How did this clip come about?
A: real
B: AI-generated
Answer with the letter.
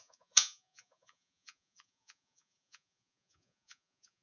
B